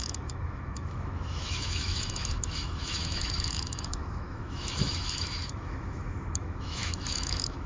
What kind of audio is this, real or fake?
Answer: fake